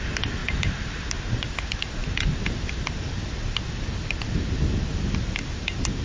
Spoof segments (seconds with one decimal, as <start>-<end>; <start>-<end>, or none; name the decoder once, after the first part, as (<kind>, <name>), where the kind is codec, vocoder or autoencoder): 0.4-1.5 (vocoder, BigVGAN v2); 2.0-2.9